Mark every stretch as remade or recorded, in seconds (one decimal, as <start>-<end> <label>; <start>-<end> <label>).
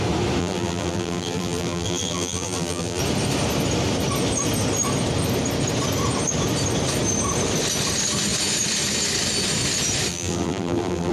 0.0-0.4 recorded; 0.4-3.0 remade; 3.0-10.1 recorded; 10.1-11.1 remade